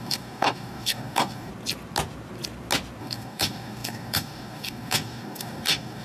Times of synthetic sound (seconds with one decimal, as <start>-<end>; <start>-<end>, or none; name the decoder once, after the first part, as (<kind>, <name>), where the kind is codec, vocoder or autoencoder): 0.0-1.5 (codec, DAC); 3.0-6.0